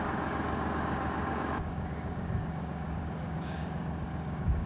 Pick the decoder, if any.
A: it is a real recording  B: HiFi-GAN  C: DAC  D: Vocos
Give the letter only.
C